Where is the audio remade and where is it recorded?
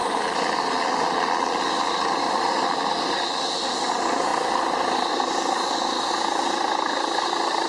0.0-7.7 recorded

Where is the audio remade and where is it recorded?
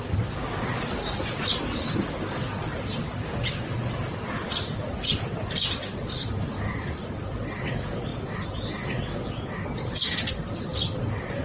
0.0-5.9 recorded; 5.9-7.0 remade; 7.0-11.4 recorded